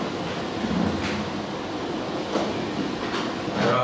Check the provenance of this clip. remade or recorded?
recorded